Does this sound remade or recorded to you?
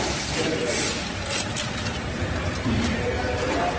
recorded